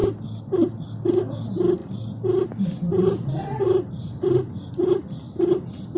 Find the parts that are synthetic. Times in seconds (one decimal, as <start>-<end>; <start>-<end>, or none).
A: none